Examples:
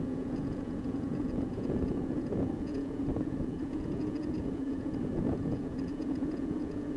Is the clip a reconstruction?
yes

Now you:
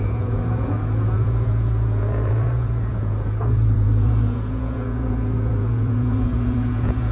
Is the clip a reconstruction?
yes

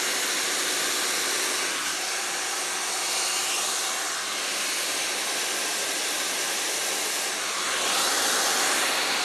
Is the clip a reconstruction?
no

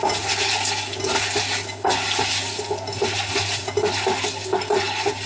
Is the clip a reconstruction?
no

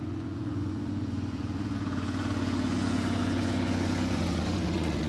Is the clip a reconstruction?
yes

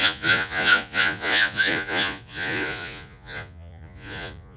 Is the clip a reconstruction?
yes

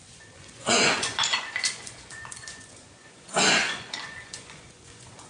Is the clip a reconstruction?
yes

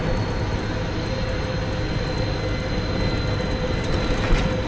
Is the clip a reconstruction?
no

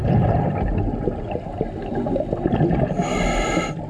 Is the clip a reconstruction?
no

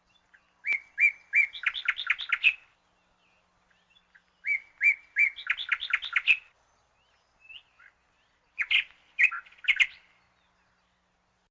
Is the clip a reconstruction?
no